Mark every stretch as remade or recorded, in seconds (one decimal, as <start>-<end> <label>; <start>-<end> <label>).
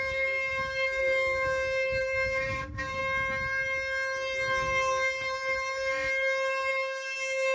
0.0-3.0 remade; 3.0-6.7 recorded; 6.7-7.5 remade